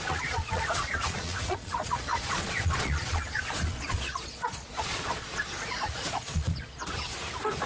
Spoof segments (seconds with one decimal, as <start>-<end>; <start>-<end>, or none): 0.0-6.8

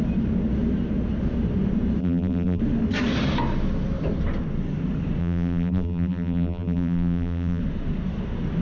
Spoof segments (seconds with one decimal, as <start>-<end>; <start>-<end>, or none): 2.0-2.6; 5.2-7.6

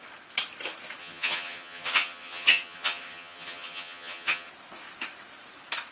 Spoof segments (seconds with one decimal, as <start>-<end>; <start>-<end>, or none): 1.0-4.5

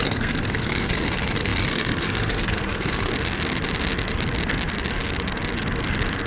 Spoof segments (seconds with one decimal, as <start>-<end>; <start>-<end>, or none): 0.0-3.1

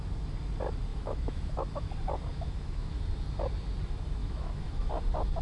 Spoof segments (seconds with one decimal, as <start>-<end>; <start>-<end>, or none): 0.9-1.9; 2.3-3.0; 4.2-4.9

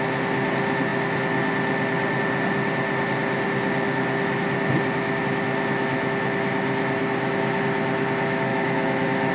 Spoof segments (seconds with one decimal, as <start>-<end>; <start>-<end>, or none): 8.5-9.3

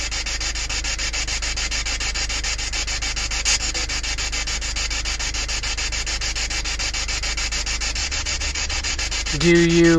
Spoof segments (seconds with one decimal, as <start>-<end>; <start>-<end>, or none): 8.0-9.0

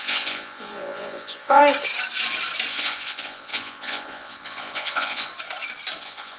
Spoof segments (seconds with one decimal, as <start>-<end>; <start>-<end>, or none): 0.0-1.6; 2.7-5.3; 6.0-6.4